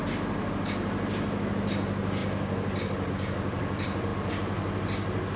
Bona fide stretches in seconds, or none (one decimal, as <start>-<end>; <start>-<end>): 0.0-5.4